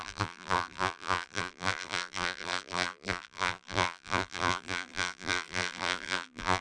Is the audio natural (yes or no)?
no